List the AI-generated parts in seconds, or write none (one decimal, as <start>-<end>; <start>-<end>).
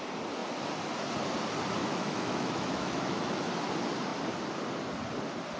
1.8-3.5